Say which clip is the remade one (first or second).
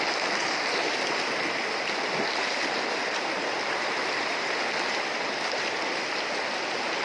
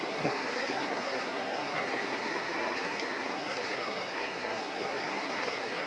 second